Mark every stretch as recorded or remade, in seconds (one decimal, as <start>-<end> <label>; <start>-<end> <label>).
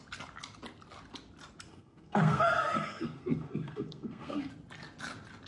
0.0-1.7 recorded; 1.7-4.5 remade; 4.5-5.5 recorded